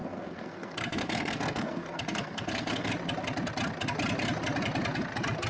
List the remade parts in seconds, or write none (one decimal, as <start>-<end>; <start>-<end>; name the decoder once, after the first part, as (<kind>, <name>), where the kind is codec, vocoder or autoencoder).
0.0-2.9 (codec, SNAC)